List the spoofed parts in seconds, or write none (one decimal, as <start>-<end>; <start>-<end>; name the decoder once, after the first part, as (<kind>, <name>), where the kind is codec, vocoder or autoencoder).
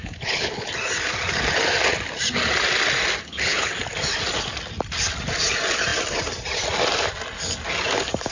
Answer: 0.0-0.7 (codec, HILCodec); 3.2-3.7